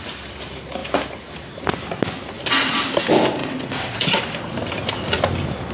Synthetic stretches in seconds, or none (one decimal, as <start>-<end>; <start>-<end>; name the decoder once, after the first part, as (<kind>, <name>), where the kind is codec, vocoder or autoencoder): 3.4-4.2 (vocoder, WaveNeXt)